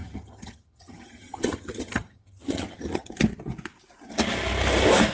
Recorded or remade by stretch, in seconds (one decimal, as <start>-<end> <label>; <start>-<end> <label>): 0.0-3.1 remade; 3.1-5.1 recorded